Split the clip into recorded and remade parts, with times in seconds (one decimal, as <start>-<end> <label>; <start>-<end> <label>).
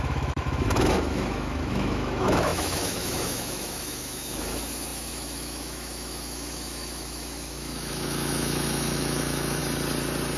0.0-9.6 remade; 9.6-10.4 recorded